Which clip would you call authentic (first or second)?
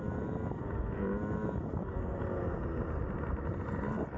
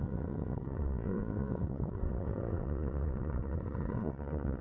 first